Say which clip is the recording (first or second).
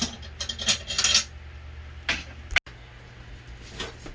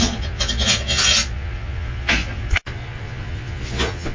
first